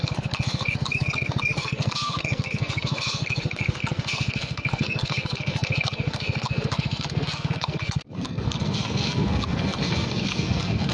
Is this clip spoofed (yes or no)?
yes